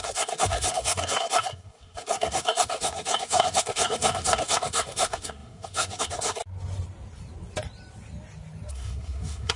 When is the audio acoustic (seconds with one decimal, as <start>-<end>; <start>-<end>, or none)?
6.4-8.7